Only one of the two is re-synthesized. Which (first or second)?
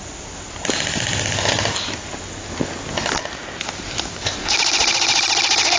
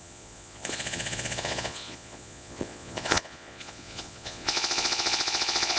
second